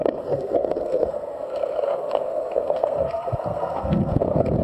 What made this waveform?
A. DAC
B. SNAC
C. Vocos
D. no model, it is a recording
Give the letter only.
B